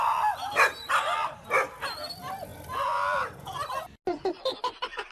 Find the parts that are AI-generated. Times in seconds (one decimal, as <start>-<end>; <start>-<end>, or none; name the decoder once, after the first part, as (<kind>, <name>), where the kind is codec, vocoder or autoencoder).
none